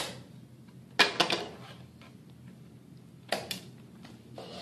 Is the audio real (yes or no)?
yes